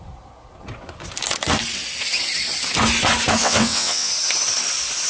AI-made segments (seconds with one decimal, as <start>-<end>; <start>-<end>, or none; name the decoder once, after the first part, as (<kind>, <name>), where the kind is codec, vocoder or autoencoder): 3.4-4.1 (vocoder, WaveNeXt)